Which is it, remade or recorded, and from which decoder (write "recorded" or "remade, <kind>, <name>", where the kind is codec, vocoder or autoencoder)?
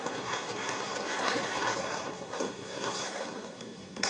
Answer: remade, codec, SNAC